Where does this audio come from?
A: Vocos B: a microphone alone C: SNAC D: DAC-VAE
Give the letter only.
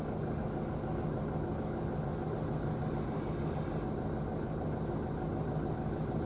B